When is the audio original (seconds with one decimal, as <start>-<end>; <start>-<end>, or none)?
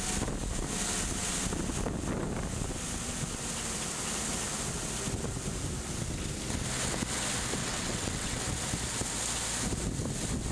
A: 0.0-7.6; 8.4-10.5